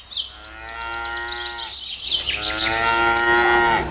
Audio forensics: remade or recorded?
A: recorded